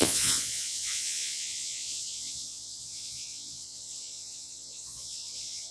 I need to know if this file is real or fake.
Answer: fake